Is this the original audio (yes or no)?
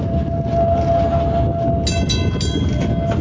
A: yes